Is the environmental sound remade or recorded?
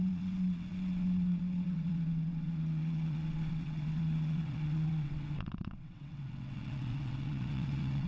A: remade